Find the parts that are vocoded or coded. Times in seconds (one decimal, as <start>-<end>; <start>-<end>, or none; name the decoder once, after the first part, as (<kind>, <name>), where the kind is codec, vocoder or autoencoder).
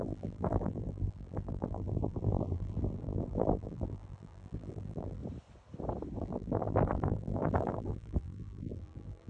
0.0-5.2 (vocoder, BigVGAN v2); 6.2-9.3